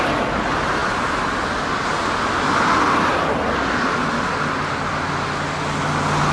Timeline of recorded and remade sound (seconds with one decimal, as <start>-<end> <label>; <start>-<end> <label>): 0.0-6.3 recorded